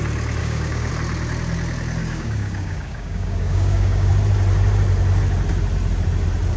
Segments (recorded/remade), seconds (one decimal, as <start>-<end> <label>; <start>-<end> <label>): 0.0-0.4 recorded; 0.4-0.9 remade; 0.9-2.0 recorded; 2.0-4.1 remade; 4.1-6.6 recorded